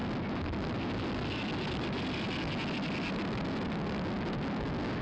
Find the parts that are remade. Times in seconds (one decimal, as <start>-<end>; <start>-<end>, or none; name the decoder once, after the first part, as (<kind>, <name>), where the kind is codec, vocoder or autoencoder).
none